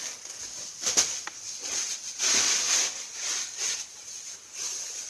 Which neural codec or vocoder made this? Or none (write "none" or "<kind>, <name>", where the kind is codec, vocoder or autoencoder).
none